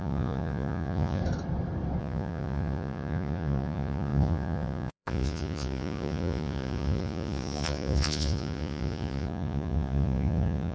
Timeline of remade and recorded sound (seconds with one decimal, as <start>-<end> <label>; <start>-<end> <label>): 0.0-1.2 remade; 1.2-2.0 recorded; 2.0-10.7 remade